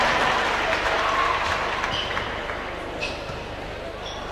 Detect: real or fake real